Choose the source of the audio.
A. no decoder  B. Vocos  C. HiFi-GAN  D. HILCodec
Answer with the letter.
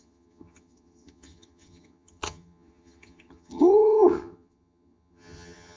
C